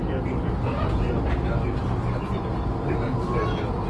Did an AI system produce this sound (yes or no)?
no